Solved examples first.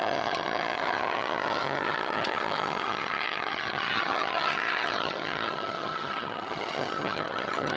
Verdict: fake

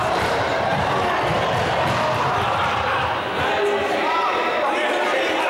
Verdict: real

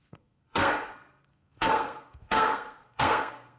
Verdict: fake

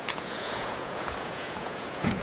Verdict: fake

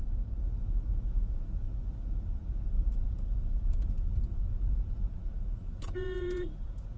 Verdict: fake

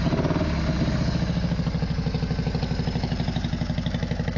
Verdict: real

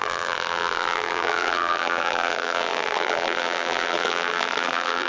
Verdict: fake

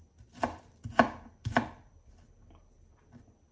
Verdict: real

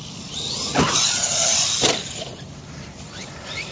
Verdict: real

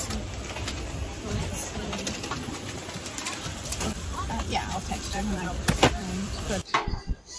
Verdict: fake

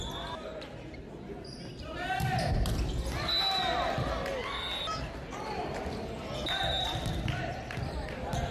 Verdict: real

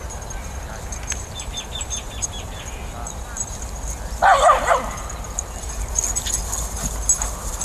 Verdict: real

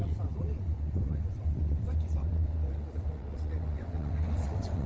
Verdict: fake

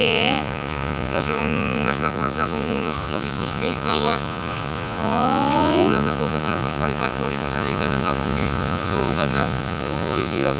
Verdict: fake